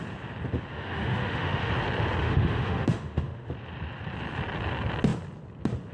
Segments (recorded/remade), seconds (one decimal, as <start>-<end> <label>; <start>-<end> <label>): 0.0-0.7 recorded; 0.7-1.7 remade; 1.7-2.2 recorded; 2.2-3.5 remade; 3.5-5.9 recorded